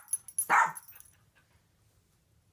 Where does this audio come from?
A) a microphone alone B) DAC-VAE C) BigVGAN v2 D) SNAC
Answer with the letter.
A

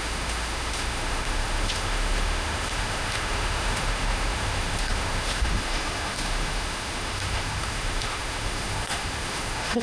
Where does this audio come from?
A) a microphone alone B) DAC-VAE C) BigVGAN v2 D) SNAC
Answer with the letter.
B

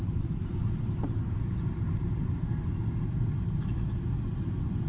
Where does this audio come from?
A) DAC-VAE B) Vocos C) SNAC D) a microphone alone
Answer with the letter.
D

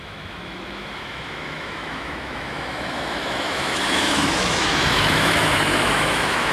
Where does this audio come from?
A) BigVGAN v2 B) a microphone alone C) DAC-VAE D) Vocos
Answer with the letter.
C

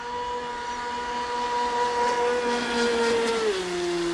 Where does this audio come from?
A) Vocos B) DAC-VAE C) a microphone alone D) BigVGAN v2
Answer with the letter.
C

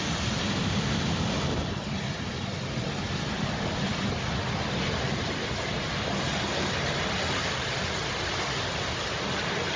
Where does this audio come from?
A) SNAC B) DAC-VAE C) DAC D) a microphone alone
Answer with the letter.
D